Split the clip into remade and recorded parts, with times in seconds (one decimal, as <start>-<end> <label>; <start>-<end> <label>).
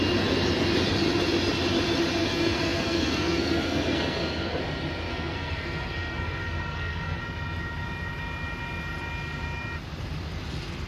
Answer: 0.0-2.2 recorded; 2.2-4.6 remade; 4.6-5.1 recorded; 5.1-7.2 remade; 7.2-10.9 recorded